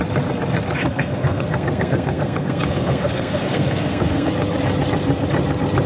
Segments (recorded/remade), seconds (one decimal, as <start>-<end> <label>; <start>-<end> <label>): 0.0-0.8 recorded; 0.8-4.3 remade; 4.3-5.9 recorded